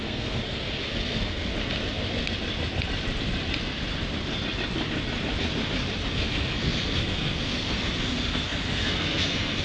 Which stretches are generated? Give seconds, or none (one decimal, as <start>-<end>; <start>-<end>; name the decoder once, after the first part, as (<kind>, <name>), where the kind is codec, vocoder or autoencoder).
0.0-1.5 (codec, SNAC); 6.1-9.6